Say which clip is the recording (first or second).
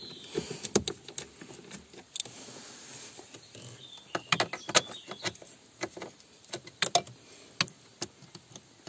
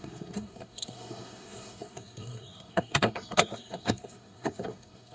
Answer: first